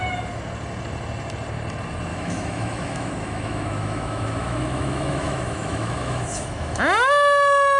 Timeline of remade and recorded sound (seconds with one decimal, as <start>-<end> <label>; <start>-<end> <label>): 0.0-2.1 recorded; 2.1-6.8 remade; 6.8-7.8 recorded